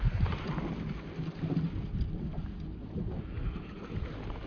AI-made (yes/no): no